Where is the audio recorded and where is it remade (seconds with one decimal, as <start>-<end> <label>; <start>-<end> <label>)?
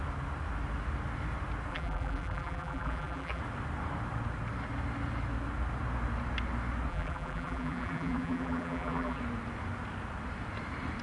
0.0-1.7 recorded; 1.7-3.4 remade; 3.4-6.9 recorded; 6.9-9.2 remade; 9.2-11.0 recorded